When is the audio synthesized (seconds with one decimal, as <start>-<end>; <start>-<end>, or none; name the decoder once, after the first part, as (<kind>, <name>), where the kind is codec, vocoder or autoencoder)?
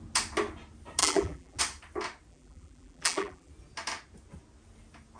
1.0-1.6 (vocoder, BigVGAN v2); 2.3-3.5